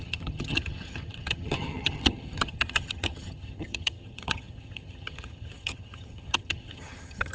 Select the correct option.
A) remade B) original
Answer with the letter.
A